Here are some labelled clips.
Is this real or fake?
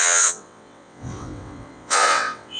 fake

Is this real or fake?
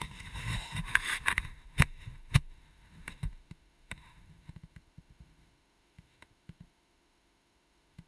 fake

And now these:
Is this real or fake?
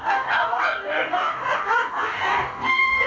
fake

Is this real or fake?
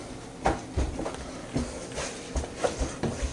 real